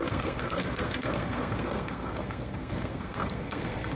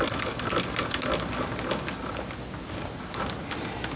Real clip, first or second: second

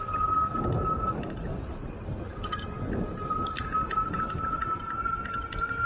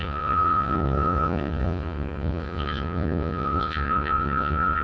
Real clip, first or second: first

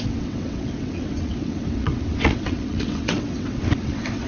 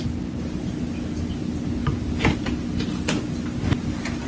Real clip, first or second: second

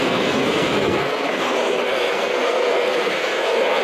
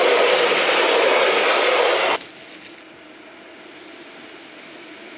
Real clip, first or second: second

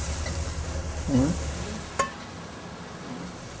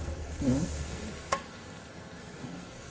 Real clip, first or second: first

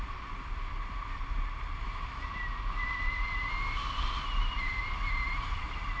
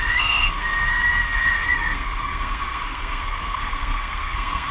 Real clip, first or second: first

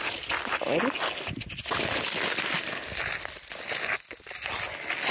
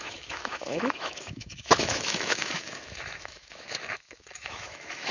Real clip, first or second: first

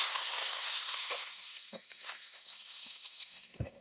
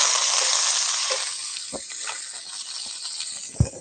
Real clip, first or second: second